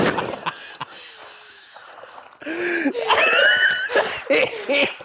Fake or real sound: real